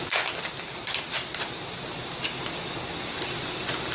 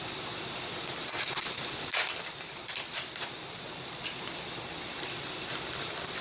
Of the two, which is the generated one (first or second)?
second